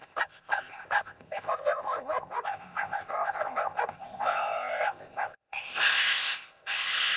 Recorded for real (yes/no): no